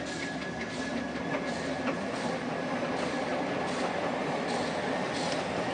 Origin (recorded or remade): recorded